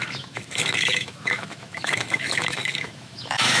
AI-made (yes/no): yes